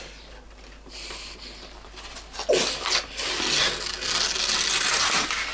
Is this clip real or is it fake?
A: real